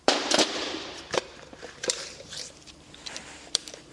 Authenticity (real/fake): fake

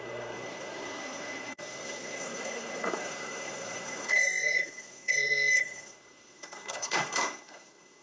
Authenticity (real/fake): fake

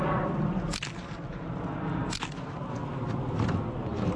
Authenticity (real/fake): real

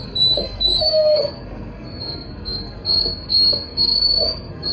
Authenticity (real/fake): fake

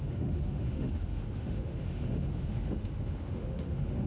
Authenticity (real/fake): fake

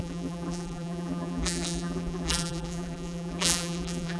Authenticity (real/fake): fake